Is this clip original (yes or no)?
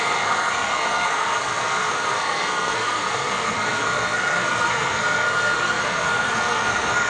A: no